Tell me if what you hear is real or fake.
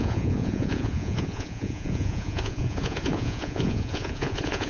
fake